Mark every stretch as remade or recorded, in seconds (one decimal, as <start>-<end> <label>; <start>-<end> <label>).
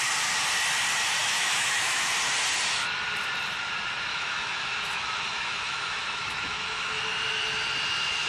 0.0-1.2 recorded; 1.2-2.1 remade; 2.1-4.1 recorded; 4.1-7.0 remade; 7.0-8.3 recorded